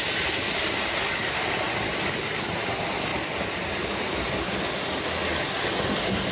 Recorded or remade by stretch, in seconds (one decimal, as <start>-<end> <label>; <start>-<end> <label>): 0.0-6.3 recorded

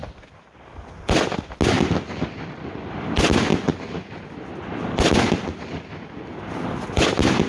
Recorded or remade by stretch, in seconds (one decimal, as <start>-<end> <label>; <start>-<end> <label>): 0.0-7.5 recorded

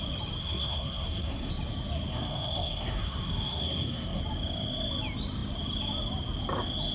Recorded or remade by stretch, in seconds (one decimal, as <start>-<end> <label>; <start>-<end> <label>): 0.0-0.4 recorded; 0.4-1.5 remade; 1.5-2.1 recorded; 2.1-4.2 remade; 4.2-6.9 recorded

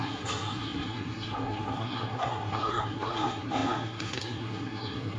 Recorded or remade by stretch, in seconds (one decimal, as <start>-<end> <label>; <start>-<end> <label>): 0.0-5.2 remade